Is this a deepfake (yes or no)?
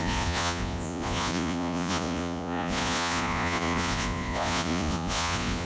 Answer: yes